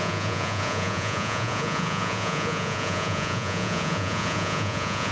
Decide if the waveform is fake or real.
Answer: fake